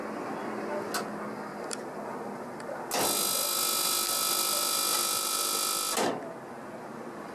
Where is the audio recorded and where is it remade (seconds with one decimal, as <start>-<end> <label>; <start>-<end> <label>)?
0.0-7.3 recorded